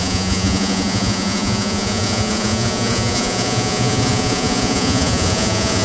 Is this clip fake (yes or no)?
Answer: yes